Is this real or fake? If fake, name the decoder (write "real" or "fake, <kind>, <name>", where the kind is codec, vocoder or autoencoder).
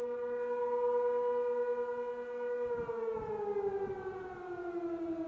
real